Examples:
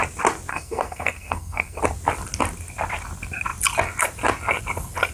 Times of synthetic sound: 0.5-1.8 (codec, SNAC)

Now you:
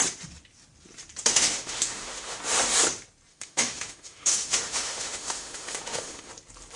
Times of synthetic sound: 1.3-2.4 (autoencoder, DAC-VAE); 3.3-6.3

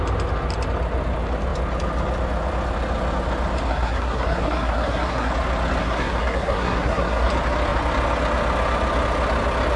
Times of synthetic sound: 3.7-5.3 (codec, SNAC); 5.8-7.3